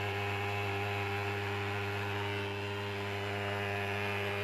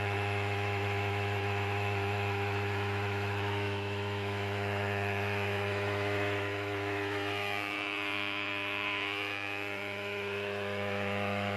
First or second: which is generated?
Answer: second